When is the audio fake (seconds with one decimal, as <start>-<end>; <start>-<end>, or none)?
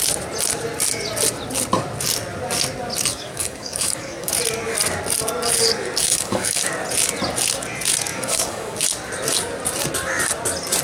3.1-4.3; 5.7-6.7; 8.1-8.8